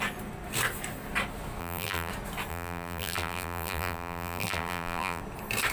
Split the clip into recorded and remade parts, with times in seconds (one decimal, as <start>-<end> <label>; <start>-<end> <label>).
0.0-1.6 recorded; 1.6-2.1 remade; 2.1-2.5 recorded; 2.5-5.2 remade; 5.2-5.7 recorded